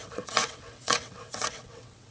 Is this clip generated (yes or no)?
yes